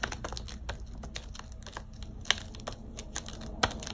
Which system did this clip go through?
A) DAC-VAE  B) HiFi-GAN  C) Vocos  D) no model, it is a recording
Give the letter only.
D